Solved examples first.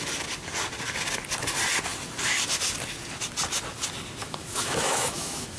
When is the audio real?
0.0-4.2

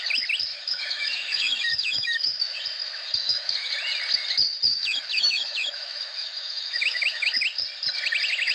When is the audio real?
0.0-0.5; 2.6-3.2; 3.7-4.7; 7.3-8.5

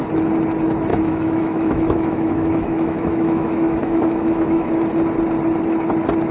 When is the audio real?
0.0-0.9; 4.7-6.3

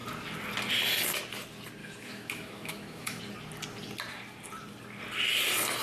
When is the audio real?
0.0-1.8; 3.2-5.8

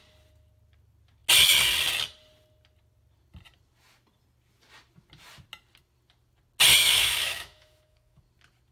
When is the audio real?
0.0-6.8; 8.2-8.7

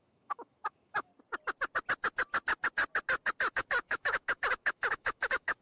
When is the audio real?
1.1-3.5